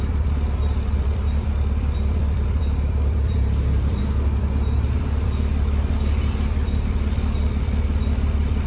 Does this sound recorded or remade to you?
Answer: remade